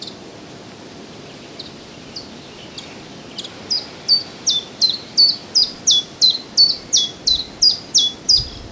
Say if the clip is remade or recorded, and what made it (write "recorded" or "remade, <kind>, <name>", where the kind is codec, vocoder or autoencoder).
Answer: recorded